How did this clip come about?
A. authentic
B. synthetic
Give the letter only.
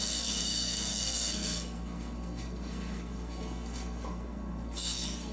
B